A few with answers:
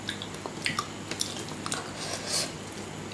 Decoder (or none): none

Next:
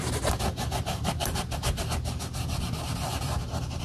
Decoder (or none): none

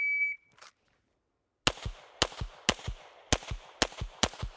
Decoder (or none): none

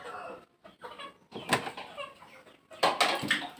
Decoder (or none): none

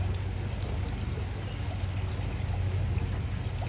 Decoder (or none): none